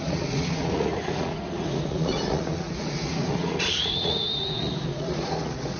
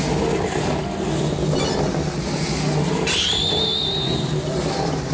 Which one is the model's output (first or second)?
first